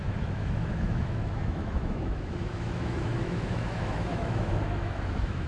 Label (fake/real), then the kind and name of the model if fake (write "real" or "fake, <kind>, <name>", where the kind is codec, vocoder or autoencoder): fake, autoencoder, DAC-VAE